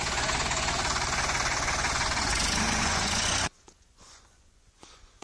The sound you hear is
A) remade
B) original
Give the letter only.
A